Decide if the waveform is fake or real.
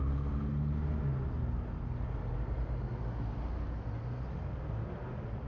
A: real